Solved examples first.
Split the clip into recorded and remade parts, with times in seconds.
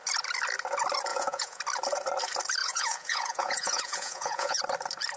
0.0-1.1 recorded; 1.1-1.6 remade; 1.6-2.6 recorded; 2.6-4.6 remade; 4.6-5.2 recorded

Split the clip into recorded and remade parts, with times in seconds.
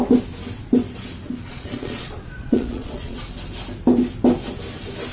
0.0-1.5 recorded; 1.5-3.2 remade; 3.2-5.1 recorded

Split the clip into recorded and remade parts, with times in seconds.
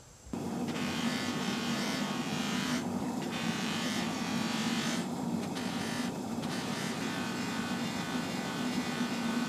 0.0-4.3 remade; 4.3-6.1 recorded; 6.1-9.5 remade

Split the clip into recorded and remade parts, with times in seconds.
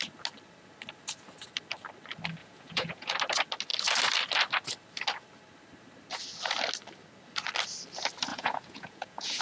0.0-2.4 recorded; 2.4-3.1 remade; 3.1-8.3 recorded; 8.3-9.4 remade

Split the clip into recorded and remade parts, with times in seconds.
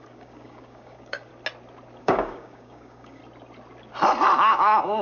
0.0-1.3 remade; 1.3-2.0 recorded; 2.0-3.2 remade; 3.2-4.5 recorded; 4.5-5.0 remade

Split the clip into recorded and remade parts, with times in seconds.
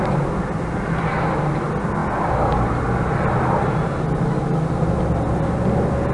0.0-6.1 recorded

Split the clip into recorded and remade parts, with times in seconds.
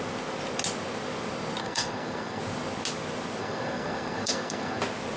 0.0-1.6 recorded; 1.6-2.4 remade; 2.4-3.4 recorded; 3.4-4.8 remade; 4.8-5.2 recorded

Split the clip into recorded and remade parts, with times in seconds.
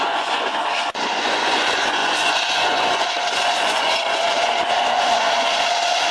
0.0-6.1 remade